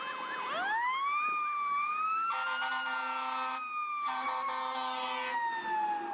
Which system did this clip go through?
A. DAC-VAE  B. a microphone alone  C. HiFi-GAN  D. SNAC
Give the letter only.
B